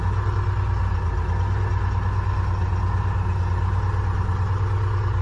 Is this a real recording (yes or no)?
yes